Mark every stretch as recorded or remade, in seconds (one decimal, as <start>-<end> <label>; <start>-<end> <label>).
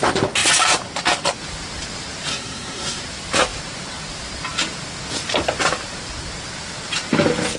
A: 0.0-2.3 recorded; 2.3-3.0 remade; 3.0-7.6 recorded